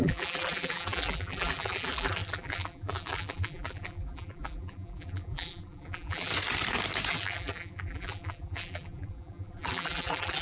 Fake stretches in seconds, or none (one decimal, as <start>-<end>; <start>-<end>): 0.0-6.3; 7.1-10.4